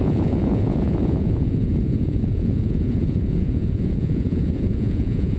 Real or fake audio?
fake